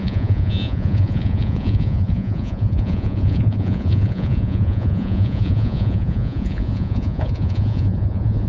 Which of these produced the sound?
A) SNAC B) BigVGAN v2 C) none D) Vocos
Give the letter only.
D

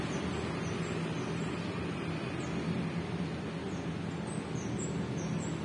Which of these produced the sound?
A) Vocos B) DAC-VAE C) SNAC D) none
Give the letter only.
D